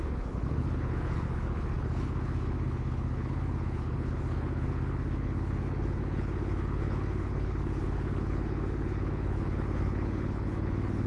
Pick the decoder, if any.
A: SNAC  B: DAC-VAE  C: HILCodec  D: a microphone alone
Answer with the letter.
C